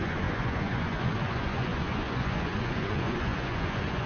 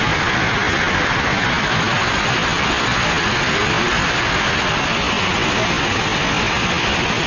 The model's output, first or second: first